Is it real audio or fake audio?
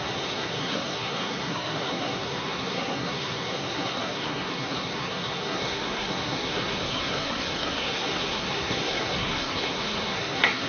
fake